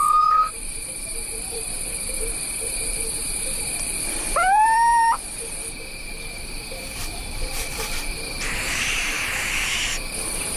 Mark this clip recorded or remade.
remade